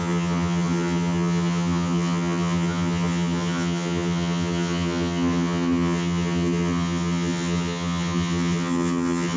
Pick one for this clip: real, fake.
fake